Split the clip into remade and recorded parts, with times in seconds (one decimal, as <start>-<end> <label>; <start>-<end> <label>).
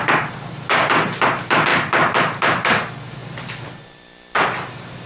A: 0.0-1.7 recorded; 1.7-2.4 remade; 2.4-3.2 recorded; 3.2-5.1 remade